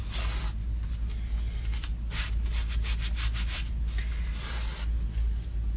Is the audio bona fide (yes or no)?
yes